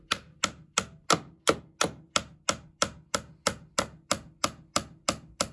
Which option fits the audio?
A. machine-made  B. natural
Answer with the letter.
B